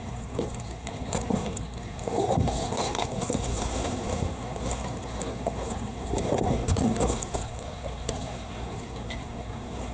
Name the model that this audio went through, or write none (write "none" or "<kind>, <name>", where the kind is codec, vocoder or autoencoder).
codec, SNAC